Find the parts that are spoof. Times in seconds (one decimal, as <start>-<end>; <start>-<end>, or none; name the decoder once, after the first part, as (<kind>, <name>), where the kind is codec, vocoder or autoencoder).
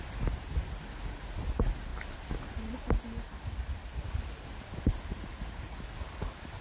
none